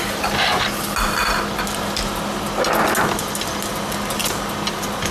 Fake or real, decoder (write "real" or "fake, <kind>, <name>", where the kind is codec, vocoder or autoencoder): real